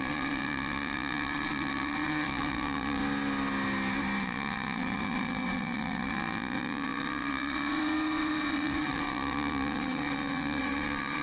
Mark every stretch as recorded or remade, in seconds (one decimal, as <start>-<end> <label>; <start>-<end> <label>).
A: 0.0-3.0 remade; 3.0-4.2 recorded; 4.2-11.2 remade